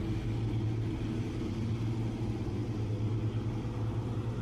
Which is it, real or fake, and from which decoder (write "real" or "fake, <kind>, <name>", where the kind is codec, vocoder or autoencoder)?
real